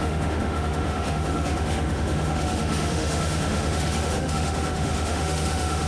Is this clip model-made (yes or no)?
yes